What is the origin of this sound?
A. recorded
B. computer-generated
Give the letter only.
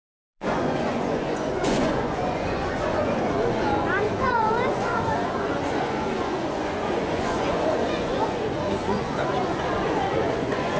B